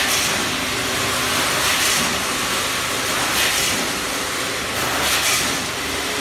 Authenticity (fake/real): real